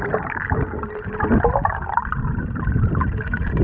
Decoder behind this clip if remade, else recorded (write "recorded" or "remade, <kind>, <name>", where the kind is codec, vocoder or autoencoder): recorded